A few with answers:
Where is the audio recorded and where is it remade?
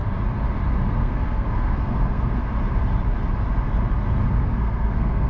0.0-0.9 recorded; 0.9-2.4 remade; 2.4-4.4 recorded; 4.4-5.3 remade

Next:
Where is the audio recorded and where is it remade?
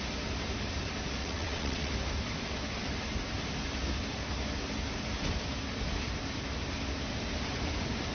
0.0-1.2 recorded; 1.2-1.9 remade; 1.9-8.1 recorded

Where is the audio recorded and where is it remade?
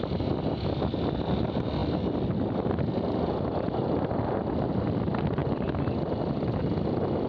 0.0-7.3 recorded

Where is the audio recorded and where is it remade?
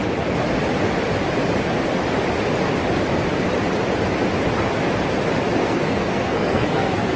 0.0-5.6 recorded; 5.6-7.2 remade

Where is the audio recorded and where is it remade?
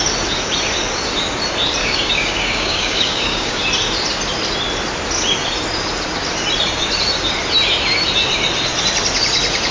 0.0-1.8 recorded; 1.8-3.6 remade; 3.6-9.7 recorded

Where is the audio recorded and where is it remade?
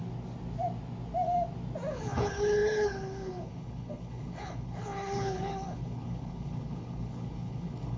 0.0-1.9 recorded; 1.9-8.0 remade